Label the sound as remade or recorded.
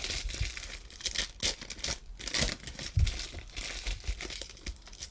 recorded